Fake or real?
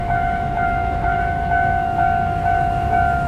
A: fake